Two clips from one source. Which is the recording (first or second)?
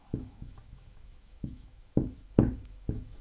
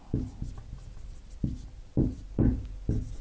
second